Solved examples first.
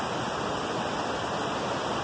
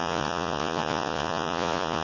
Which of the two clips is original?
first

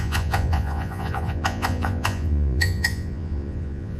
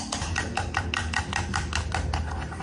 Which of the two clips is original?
second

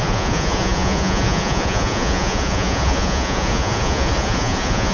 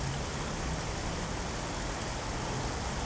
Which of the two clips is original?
second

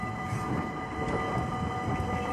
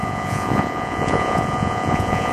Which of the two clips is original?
first